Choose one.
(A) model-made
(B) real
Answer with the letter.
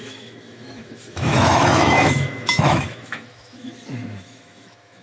A